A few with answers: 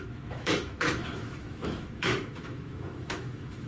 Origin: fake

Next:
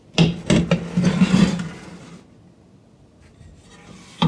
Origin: real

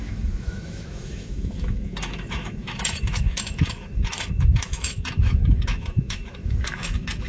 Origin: fake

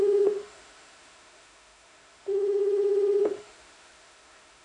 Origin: fake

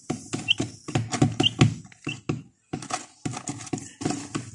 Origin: real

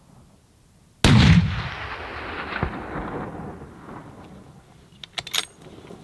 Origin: real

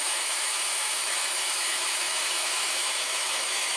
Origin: fake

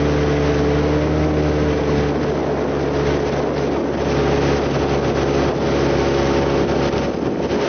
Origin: real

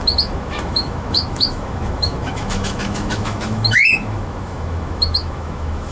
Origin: fake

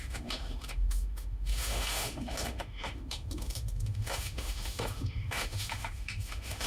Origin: fake